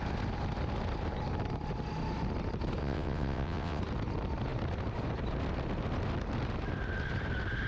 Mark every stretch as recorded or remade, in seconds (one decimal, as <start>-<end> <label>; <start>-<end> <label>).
0.0-2.8 recorded; 2.8-3.8 remade; 3.8-7.7 recorded